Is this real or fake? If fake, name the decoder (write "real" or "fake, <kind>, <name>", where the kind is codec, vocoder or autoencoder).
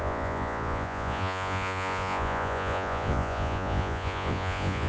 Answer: fake, vocoder, Vocos